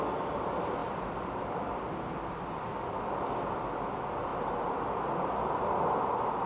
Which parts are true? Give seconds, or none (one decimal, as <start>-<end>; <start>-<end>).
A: 0.0-0.8; 2.5-4.3; 6.0-6.5